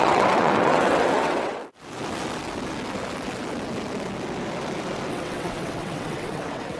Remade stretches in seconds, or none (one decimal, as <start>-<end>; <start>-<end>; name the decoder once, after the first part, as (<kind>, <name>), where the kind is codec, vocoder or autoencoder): 0.0-1.6 (vocoder, WaveNeXt); 5.1-6.8